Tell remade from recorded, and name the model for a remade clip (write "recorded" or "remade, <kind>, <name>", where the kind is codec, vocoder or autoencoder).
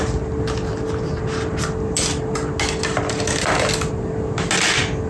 recorded